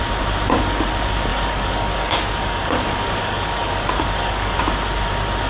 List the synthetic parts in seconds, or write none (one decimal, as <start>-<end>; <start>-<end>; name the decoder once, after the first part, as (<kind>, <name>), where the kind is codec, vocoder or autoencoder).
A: 1.3-4.6 (codec, DAC)